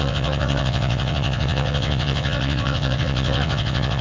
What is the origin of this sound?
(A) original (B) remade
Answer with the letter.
B